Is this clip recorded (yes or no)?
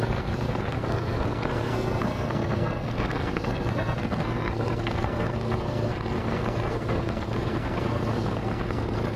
no